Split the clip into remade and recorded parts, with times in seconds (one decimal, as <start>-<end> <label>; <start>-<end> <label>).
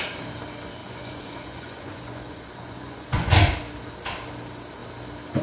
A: 0.0-0.8 recorded; 0.8-3.3 remade; 3.3-5.4 recorded